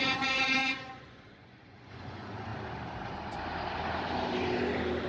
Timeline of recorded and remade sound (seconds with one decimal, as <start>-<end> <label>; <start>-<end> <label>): 0.0-2.5 remade; 2.5-5.1 recorded